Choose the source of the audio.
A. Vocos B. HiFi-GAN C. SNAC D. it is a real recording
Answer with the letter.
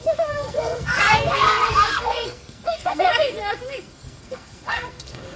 C